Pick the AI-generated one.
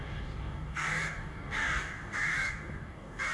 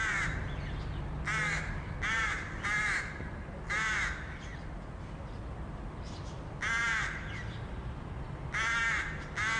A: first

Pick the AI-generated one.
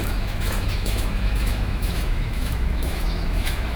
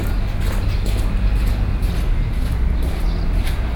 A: first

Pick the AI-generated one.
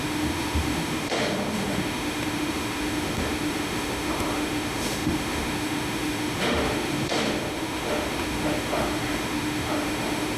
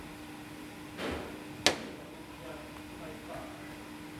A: first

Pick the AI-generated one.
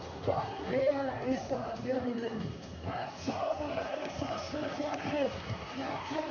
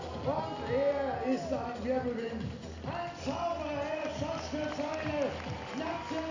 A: first